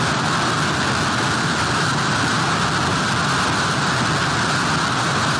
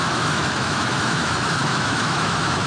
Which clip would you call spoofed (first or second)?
second